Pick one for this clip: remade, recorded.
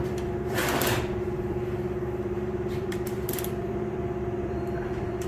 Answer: remade